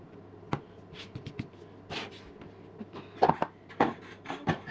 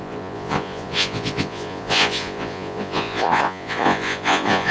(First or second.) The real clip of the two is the first